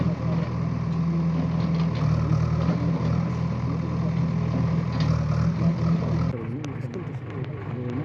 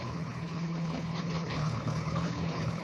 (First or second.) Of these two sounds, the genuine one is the first